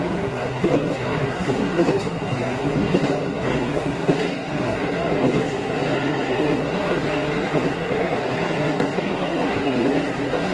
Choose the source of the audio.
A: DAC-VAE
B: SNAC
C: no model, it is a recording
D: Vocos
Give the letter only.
B